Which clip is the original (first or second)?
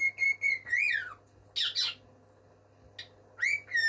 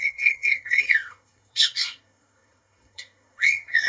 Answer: first